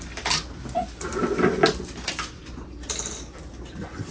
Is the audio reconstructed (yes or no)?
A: no